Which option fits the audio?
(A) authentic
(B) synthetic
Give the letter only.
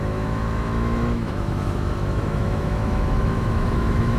B